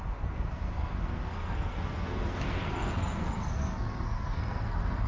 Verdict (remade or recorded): remade